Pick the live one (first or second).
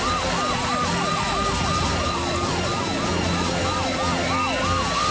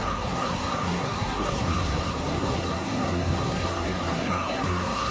first